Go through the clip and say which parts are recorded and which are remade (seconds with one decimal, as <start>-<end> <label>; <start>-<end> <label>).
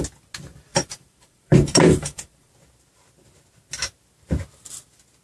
0.0-0.7 recorded; 0.7-2.5 remade; 2.5-5.2 recorded